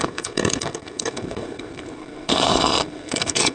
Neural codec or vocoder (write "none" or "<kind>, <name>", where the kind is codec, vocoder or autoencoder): codec, SNAC